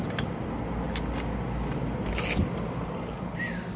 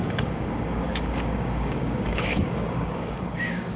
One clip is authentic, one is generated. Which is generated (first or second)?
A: second